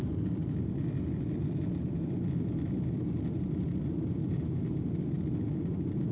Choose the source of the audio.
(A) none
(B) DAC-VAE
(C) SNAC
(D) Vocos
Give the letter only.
A